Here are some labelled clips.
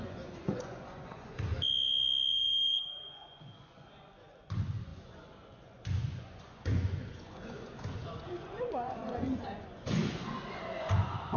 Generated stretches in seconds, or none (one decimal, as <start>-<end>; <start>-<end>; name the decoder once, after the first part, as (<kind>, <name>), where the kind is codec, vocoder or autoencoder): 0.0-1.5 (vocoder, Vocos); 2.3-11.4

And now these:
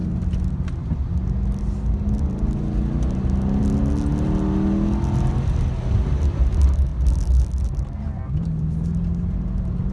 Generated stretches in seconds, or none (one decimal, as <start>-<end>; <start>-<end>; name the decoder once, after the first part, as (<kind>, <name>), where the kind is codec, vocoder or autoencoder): none

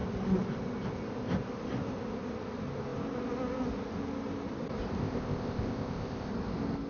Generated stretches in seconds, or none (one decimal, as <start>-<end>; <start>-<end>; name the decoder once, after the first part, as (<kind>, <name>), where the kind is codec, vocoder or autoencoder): 5.0-6.3 (codec, ZipCodec)